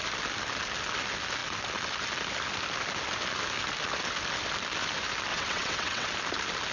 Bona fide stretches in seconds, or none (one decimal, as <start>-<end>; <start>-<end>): 0.0-5.3; 6.1-6.7